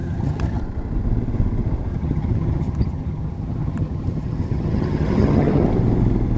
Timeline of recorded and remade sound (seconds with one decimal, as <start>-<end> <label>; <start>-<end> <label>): 0.0-0.6 remade; 0.6-1.9 recorded; 1.9-5.7 remade; 5.7-6.4 recorded